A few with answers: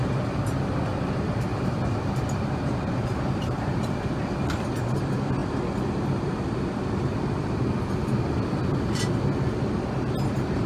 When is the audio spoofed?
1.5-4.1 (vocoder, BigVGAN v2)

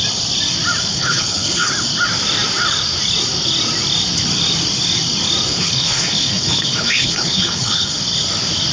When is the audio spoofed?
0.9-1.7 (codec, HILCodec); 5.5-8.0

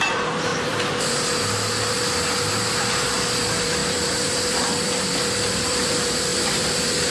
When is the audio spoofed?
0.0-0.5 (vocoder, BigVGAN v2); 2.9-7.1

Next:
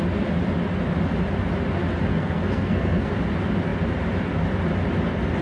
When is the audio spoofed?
2.1-3.1 (codec, SNAC)

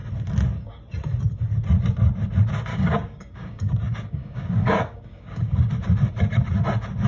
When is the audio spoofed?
2.7-5.7 (codec, DAC)

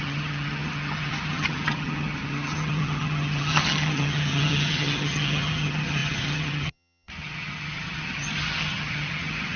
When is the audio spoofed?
0.0-9.6 (vocoder, HiFi-GAN)

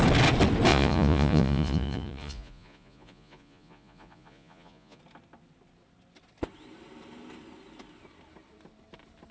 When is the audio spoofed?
0.7-5.0 (vocoder, Vocos)

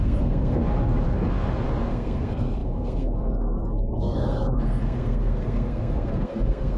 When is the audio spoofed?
0.0-0.6 (codec, SNAC); 1.9-6.8